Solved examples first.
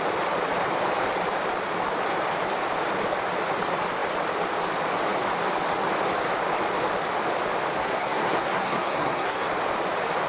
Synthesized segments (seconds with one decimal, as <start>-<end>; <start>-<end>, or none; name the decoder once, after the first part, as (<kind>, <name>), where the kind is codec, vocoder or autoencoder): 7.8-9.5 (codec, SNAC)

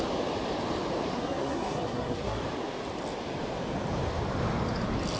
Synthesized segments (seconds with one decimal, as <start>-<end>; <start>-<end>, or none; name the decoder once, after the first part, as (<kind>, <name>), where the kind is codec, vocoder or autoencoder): 1.1-2.4 (codec, SNAC)

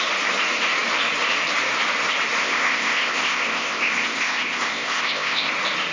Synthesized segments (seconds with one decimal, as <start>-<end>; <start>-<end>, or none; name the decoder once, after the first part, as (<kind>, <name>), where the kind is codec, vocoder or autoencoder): 2.4-5.5 (codec, ZipCodec)